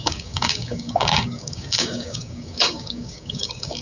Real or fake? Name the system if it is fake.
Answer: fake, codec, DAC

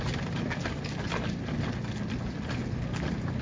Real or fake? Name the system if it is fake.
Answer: real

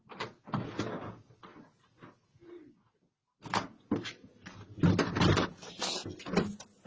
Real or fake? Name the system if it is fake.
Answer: real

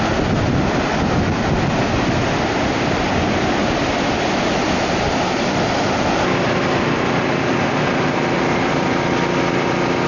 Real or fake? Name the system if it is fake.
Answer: real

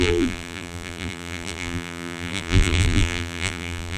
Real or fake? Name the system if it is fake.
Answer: fake, vocoder, BigVGAN v2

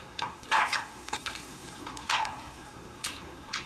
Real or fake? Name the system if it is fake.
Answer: fake, codec, SNAC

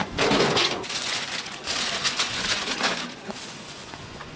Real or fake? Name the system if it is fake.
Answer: fake, vocoder, Vocos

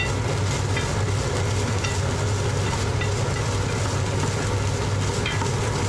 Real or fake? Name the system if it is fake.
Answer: real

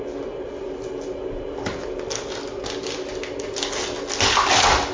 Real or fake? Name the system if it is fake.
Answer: real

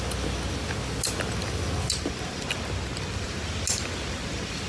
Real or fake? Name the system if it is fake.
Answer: real